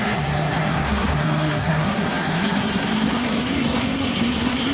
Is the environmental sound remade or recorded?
remade